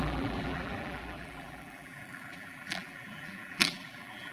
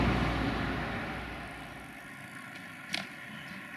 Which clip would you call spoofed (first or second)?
first